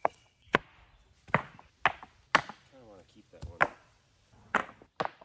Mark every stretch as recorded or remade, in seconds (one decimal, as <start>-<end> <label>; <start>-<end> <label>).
0.0-0.6 remade; 0.6-3.7 recorded; 3.7-4.6 remade; 4.6-5.2 recorded